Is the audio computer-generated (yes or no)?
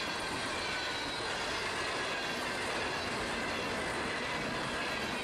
no